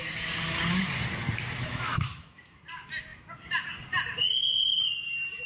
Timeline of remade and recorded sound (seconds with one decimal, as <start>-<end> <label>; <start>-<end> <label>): 0.0-1.6 recorded; 1.6-2.6 remade; 2.6-5.5 recorded